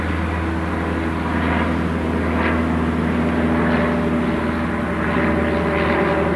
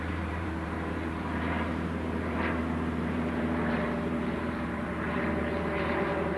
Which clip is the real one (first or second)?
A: first